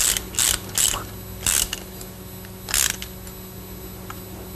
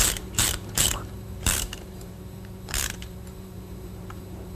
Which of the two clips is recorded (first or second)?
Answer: first